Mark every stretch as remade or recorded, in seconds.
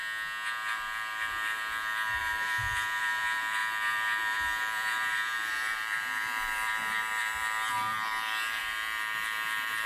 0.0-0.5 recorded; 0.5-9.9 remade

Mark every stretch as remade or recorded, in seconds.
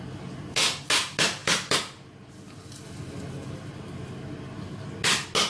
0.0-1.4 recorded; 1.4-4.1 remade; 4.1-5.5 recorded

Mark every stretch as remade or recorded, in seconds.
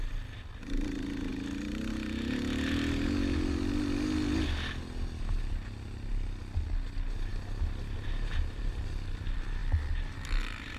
0.0-10.8 recorded